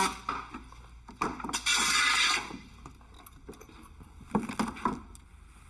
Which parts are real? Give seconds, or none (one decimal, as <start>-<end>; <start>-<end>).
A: 0.0-5.7